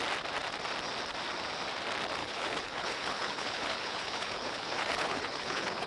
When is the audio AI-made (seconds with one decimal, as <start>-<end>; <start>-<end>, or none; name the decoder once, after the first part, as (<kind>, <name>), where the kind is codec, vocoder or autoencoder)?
2.2-5.9 (codec, HILCodec)